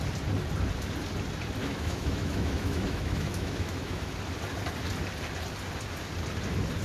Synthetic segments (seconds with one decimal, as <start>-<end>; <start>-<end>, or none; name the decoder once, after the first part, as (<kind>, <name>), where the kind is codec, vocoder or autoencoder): 1.6-4.1 (autoencoder, DAC-VAE)